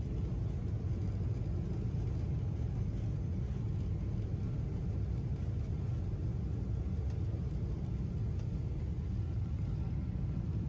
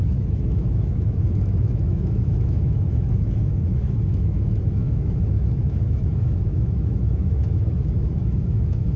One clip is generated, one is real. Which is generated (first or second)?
second